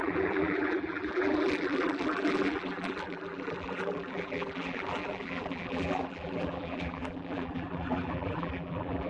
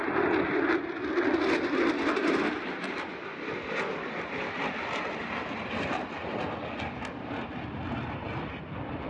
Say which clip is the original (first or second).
second